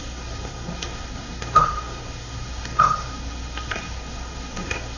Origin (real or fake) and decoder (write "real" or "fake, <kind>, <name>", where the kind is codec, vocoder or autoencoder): fake, codec, SNAC